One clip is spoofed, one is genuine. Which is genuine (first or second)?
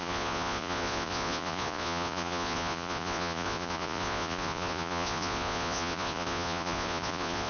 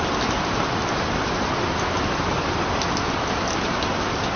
second